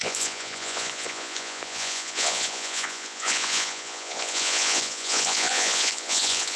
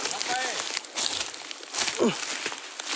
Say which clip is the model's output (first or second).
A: first